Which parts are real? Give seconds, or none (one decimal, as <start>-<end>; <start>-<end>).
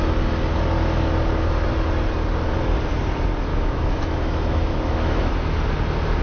0.0-3.5; 5.3-6.2